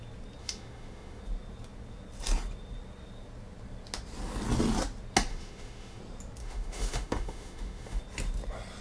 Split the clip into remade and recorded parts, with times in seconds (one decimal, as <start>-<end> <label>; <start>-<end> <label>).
0.0-0.4 recorded; 0.4-1.2 remade; 1.2-5.3 recorded; 5.3-6.0 remade; 6.0-6.4 recorded; 6.4-8.0 remade; 8.0-8.8 recorded